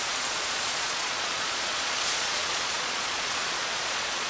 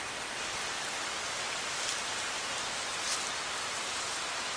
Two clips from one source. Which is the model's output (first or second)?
first